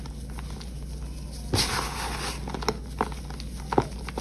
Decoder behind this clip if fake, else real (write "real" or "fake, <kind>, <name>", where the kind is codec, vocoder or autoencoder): real